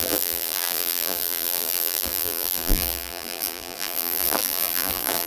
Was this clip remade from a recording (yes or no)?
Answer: yes